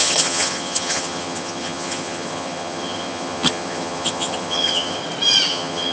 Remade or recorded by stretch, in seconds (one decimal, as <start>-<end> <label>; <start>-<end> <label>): 0.0-5.0 remade; 5.0-5.5 recorded; 5.5-5.9 remade

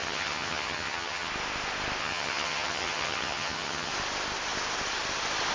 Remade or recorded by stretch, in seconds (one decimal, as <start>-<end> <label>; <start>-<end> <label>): 0.0-1.3 remade; 1.3-2.0 recorded; 2.0-3.9 remade; 3.9-5.5 recorded

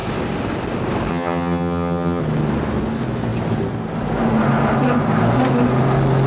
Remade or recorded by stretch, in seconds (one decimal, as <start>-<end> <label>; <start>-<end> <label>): 0.0-1.1 recorded; 1.1-2.2 remade; 2.2-6.3 recorded